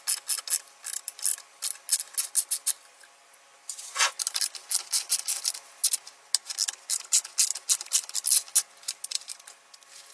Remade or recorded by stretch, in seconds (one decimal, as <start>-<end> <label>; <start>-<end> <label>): 0.0-10.1 recorded

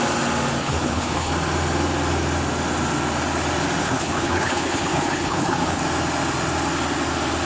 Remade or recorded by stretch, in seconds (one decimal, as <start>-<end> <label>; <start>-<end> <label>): 0.0-0.6 recorded; 0.6-1.3 remade; 1.3-3.8 recorded; 3.8-5.8 remade; 5.8-7.5 recorded

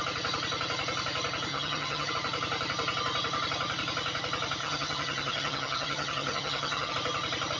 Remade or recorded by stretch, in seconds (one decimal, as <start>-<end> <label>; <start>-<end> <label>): 0.0-1.5 recorded; 1.5-2.1 remade; 2.1-4.6 recorded; 4.6-6.9 remade; 6.9-7.6 recorded